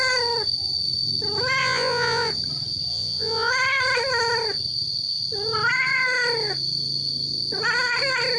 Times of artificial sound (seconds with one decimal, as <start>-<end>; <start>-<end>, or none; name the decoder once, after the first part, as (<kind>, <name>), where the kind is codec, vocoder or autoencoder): 1.6-2.3 (vocoder, Vocos); 2.9-3.5